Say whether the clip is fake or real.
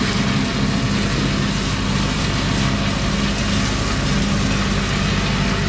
real